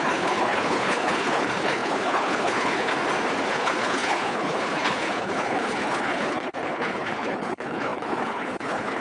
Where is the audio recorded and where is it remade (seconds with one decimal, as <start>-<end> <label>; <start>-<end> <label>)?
0.0-2.9 remade; 2.9-3.5 recorded; 3.5-9.0 remade

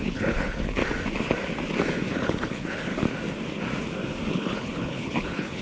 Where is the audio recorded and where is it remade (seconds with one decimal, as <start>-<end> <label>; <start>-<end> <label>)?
0.0-0.8 remade; 0.8-2.1 recorded; 2.1-2.9 remade; 2.9-4.3 recorded; 4.3-5.6 remade

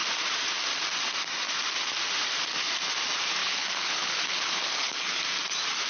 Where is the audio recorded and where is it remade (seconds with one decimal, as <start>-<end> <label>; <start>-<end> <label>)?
0.0-3.4 recorded; 3.4-5.2 remade; 5.2-5.9 recorded

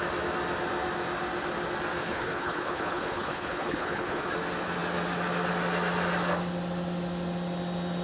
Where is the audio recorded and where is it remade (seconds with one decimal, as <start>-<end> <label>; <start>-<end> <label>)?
0.0-2.0 recorded; 2.0-4.3 remade; 4.3-8.0 recorded

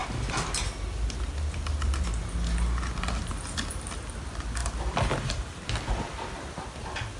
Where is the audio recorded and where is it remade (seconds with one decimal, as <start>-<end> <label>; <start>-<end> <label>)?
0.0-7.2 recorded